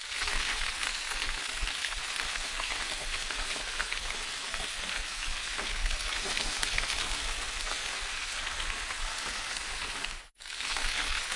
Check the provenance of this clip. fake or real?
fake